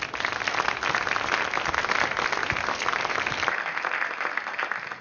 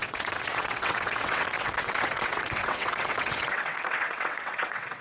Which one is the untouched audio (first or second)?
first